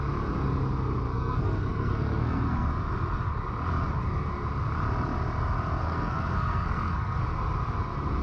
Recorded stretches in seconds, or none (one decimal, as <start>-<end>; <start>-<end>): 0.0-1.1; 2.7-5.8; 7.2-8.2